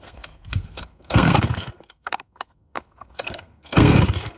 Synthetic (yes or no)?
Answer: yes